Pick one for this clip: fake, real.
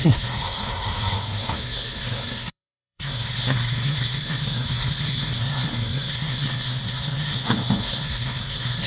fake